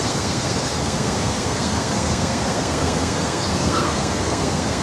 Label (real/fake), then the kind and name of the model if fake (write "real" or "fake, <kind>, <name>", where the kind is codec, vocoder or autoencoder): fake, codec, SNAC